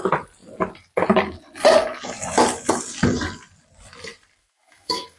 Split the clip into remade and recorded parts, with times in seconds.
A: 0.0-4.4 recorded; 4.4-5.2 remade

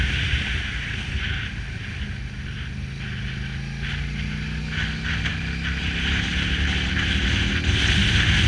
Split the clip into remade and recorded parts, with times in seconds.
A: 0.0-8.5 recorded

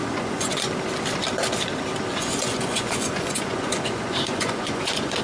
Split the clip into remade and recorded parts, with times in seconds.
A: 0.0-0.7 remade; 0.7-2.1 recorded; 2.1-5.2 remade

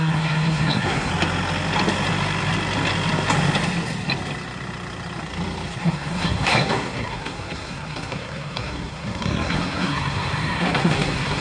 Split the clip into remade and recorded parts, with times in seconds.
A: 0.0-1.1 remade; 1.1-5.8 recorded; 5.8-11.4 remade

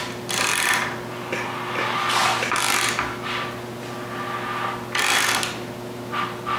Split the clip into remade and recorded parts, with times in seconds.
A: 0.0-6.6 recorded